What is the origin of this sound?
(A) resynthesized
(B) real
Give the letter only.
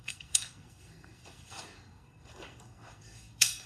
A